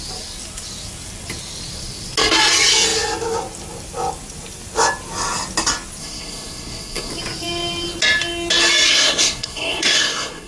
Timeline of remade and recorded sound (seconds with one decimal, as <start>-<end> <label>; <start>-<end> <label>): 0.0-6.0 recorded; 6.0-7.1 remade; 7.1-8.9 recorded; 8.9-10.5 remade